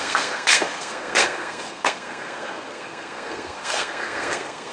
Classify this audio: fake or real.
fake